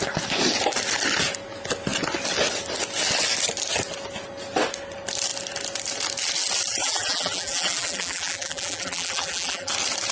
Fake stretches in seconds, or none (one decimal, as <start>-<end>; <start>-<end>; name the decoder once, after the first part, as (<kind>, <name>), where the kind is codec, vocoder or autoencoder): 6.8-9.7 (vocoder, BigVGAN v2)